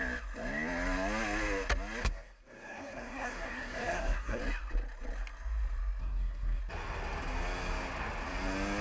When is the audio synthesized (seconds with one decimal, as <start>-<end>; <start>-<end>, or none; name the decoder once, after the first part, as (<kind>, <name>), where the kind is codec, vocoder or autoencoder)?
2.0-4.4 (codec, SNAC); 6.0-6.6